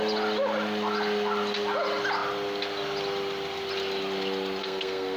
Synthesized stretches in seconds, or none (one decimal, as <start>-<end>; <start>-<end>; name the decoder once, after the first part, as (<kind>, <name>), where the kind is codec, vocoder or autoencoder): 4.6-5.2 (codec, SNAC)